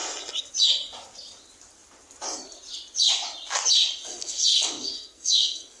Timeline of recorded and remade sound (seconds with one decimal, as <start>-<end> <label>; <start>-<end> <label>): 0.0-4.1 recorded; 4.1-5.8 remade